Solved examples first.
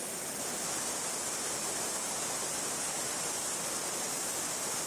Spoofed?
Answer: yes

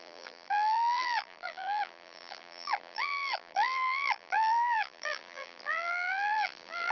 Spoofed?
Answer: yes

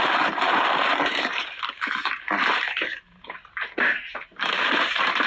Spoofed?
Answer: yes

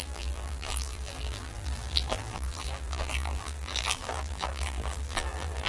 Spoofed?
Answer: yes